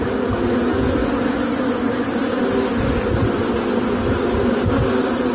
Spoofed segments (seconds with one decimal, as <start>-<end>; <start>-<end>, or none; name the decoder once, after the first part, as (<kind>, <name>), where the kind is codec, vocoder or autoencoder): none